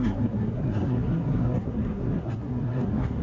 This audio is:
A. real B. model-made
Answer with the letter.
B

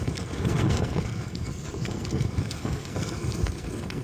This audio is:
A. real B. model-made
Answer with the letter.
B